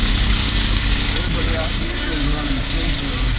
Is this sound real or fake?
fake